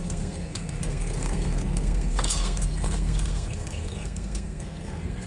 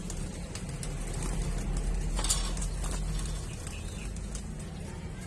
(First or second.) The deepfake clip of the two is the first